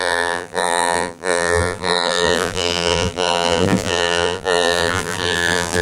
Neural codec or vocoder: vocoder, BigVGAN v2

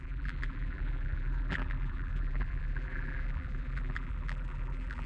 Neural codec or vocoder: vocoder, BigVGAN v2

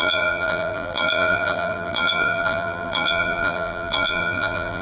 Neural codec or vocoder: vocoder, BigVGAN v2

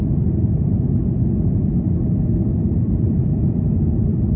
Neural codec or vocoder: vocoder, BigVGAN v2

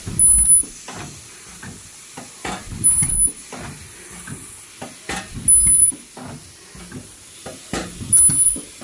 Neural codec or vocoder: none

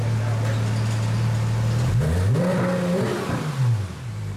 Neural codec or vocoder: none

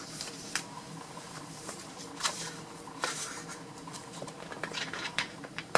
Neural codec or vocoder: vocoder, BigVGAN v2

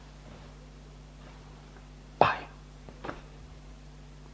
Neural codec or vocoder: vocoder, BigVGAN v2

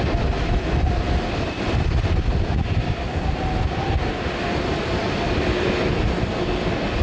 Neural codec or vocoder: none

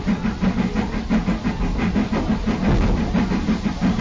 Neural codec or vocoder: none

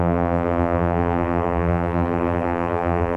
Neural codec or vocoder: vocoder, BigVGAN v2